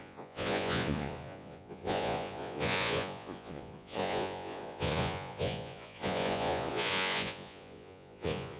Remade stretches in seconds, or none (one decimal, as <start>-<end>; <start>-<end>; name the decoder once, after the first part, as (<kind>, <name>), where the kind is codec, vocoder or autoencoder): 0.0-8.6 (vocoder, Vocos)